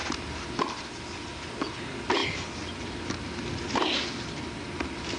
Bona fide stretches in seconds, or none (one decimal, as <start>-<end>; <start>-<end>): 0.0-5.2